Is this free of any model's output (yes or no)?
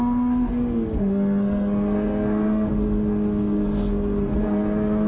no